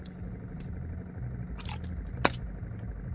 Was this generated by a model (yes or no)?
no